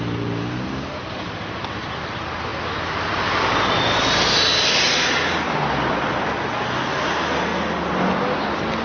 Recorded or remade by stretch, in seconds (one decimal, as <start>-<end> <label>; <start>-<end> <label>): 0.0-8.8 recorded